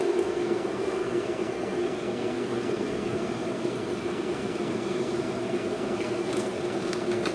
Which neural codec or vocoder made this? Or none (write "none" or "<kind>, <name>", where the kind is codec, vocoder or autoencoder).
codec, SNAC